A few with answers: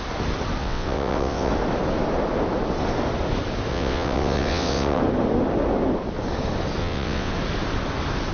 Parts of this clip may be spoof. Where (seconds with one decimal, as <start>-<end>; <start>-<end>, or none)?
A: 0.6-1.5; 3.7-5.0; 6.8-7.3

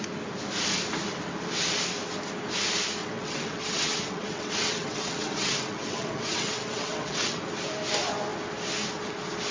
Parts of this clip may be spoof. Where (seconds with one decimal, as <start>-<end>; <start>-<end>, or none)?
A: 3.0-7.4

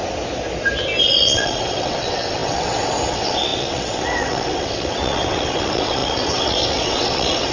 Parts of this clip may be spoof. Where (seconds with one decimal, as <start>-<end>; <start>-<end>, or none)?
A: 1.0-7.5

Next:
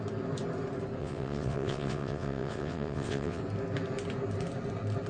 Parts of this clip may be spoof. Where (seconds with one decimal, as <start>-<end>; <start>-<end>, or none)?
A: 1.0-3.4

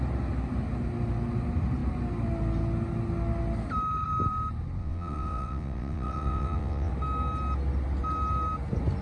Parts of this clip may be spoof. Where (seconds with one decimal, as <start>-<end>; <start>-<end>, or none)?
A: 4.8-6.9

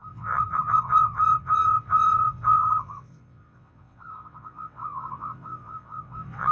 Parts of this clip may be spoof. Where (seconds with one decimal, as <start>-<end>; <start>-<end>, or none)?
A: 0.0-6.5